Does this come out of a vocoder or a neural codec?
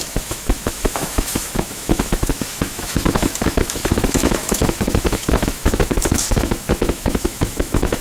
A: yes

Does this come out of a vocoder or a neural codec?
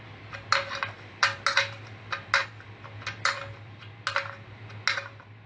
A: no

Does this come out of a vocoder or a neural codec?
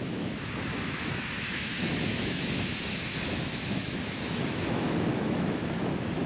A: yes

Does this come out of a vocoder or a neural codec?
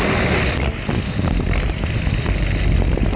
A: no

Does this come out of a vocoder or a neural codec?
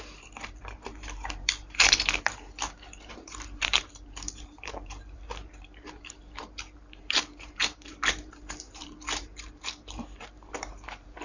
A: yes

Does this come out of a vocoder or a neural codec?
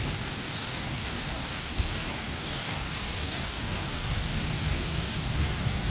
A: yes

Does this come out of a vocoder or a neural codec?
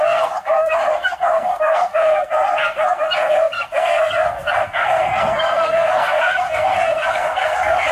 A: yes